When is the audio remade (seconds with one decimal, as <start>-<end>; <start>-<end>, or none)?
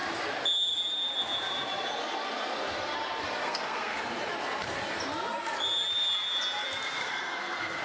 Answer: 3.4-4.0; 7.0-7.8